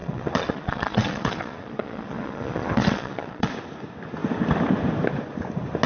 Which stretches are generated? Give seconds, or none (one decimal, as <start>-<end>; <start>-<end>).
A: 0.0-3.5